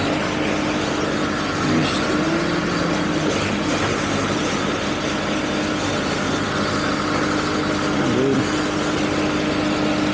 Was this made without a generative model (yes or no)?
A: yes